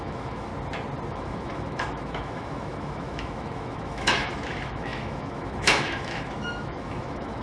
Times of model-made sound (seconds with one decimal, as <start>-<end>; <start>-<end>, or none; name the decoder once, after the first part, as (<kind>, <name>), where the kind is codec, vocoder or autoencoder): 0.0-0.5 (autoencoder, DAC-VAE); 1.1-7.4